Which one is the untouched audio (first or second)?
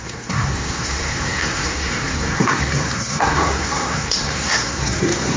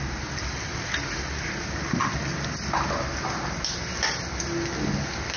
second